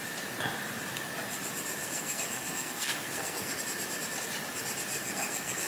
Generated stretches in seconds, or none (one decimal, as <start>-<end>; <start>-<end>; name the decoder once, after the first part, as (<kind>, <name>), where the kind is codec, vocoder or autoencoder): 1.8-3.6 (codec, SNAC); 5.0-5.7